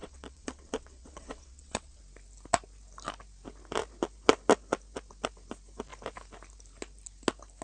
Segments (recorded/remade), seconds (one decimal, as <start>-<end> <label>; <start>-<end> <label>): 0.0-2.0 remade; 2.0-7.6 recorded